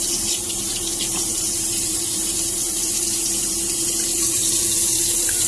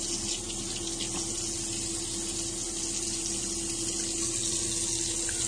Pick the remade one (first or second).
first